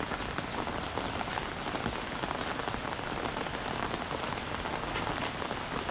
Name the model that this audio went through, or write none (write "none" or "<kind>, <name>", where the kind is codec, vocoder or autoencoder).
none